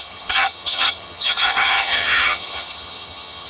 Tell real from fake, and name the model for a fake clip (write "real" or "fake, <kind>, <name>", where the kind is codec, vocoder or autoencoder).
fake, vocoder, HiFi-GAN